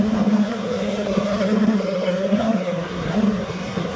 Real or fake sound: fake